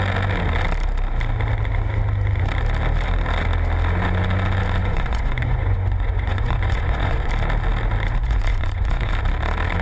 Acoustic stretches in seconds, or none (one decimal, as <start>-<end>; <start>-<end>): 0.0-4.8; 7.3-8.2; 9.1-9.8